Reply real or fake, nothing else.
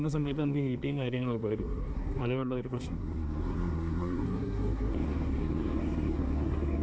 fake